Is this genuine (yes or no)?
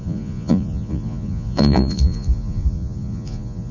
no